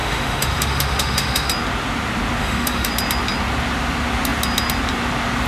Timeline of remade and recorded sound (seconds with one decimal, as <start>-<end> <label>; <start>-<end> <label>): 0.0-1.5 remade; 1.5-2.4 recorded; 2.4-2.9 remade; 2.9-5.5 recorded